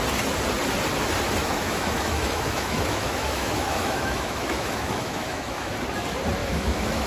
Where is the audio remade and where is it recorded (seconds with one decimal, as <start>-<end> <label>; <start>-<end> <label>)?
0.0-1.4 recorded; 1.4-5.7 remade; 5.7-6.4 recorded; 6.4-7.1 remade